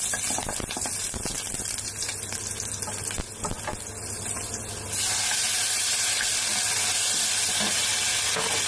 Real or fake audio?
real